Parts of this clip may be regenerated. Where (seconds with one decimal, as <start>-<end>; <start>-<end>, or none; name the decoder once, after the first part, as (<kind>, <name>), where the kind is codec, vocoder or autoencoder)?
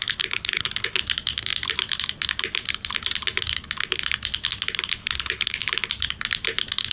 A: 0.0-1.0 (codec, HILCodec); 5.0-5.6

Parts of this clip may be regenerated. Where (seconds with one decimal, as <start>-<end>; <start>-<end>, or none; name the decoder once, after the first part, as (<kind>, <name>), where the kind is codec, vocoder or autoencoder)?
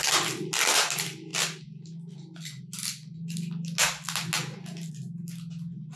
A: none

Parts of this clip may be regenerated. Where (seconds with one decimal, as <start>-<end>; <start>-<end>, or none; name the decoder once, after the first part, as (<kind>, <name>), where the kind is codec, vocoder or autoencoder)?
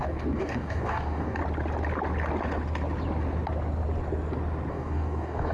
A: 0.0-1.4 (codec, DAC); 4.7-5.5